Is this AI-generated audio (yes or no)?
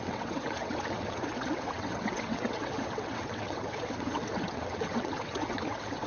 yes